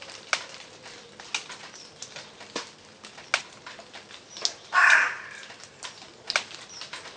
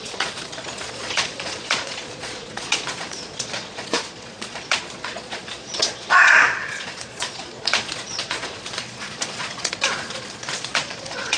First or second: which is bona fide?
first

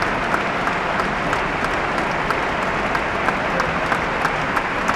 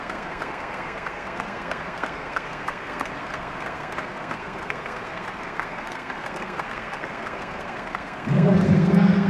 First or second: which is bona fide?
first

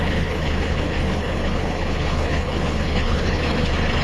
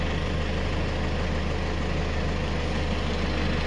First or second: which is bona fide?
second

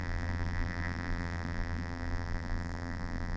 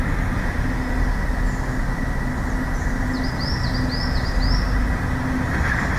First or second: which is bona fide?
second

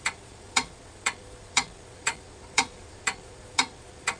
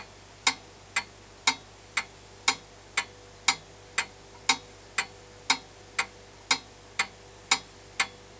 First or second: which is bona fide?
second